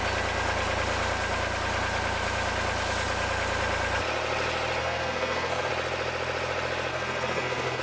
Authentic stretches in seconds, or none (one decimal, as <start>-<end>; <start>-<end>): 0.0-4.8; 5.7-6.9